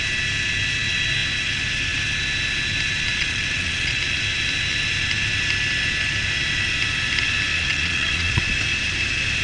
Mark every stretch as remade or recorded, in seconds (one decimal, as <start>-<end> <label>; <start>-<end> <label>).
0.0-3.1 recorded; 3.1-4.0 remade; 4.0-7.5 recorded; 7.5-8.4 remade; 8.4-9.4 recorded